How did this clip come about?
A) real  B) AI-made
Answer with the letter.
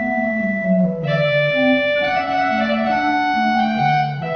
B